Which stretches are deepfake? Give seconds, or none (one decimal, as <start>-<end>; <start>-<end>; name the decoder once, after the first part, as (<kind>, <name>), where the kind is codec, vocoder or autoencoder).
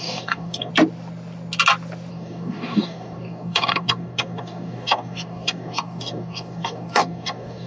0.0-0.7 (codec, DAC); 2.1-7.7